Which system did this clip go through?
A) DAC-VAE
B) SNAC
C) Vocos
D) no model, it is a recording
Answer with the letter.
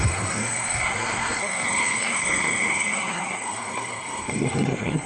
B